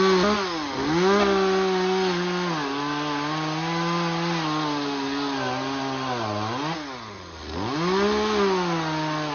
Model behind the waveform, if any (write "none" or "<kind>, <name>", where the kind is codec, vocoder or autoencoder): none